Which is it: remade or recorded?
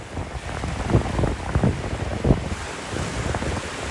recorded